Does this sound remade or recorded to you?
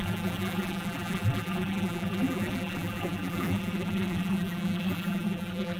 remade